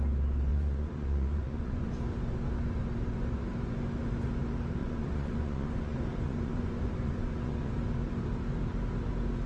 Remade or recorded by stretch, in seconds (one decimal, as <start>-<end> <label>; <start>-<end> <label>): 0.0-0.5 recorded; 0.5-2.0 remade; 2.0-4.8 recorded; 4.8-7.7 remade; 7.7-9.5 recorded